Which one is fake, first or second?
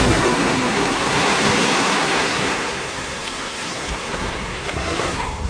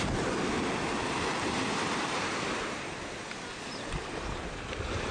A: first